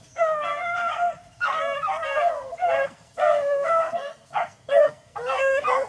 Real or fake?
fake